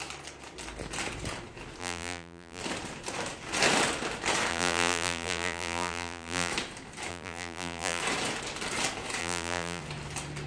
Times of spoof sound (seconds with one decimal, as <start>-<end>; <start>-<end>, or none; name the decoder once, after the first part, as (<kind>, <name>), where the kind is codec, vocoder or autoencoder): 1.8-2.6 (vocoder, BigVGAN v2); 4.5-6.5; 7.1-8.0; 9.2-9.8